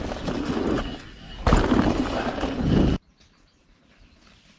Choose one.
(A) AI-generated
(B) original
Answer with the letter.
B